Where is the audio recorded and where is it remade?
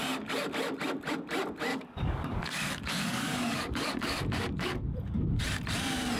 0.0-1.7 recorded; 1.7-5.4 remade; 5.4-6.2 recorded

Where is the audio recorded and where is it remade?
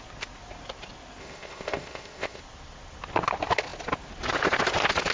0.0-1.2 recorded; 1.2-2.4 remade; 2.4-5.1 recorded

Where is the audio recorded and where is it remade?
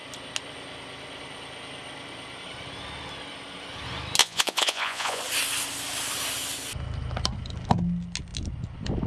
0.0-4.2 recorded; 4.2-5.2 remade; 5.2-9.1 recorded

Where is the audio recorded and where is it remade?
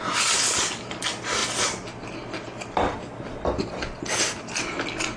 0.0-5.2 recorded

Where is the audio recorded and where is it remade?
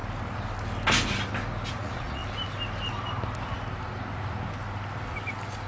0.0-1.7 recorded; 1.7-2.2 remade; 2.2-5.7 recorded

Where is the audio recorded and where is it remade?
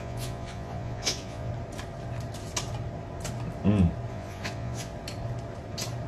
0.0-1.5 remade; 1.5-4.1 recorded; 4.1-4.9 remade; 4.9-6.1 recorded